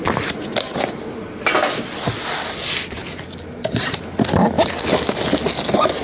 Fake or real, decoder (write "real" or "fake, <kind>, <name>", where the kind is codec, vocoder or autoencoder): real